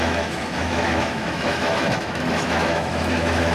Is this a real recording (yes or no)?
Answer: no